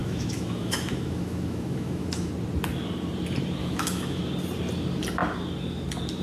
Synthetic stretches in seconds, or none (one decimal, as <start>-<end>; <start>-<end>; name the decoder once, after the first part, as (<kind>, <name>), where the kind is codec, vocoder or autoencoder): 0.0-2.3 (autoencoder, DAC-VAE); 3.6-4.2